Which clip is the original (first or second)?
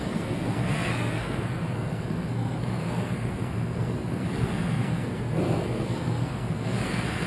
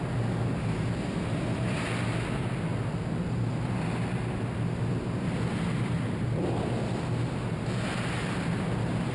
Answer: second